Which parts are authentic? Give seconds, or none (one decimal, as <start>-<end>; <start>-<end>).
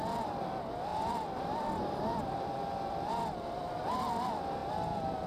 0.0-0.9; 3.4-5.3